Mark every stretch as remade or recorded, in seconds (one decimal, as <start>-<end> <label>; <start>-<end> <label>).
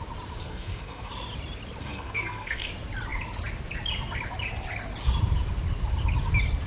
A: 0.0-0.4 recorded; 0.4-1.1 remade; 1.1-1.8 recorded; 1.8-2.7 remade; 2.7-6.7 recorded